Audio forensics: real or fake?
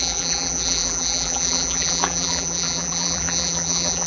fake